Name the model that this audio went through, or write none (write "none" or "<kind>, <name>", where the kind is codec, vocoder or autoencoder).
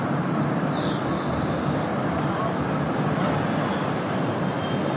none